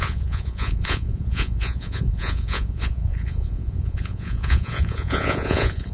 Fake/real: fake